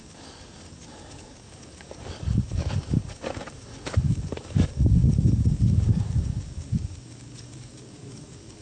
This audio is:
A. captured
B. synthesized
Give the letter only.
B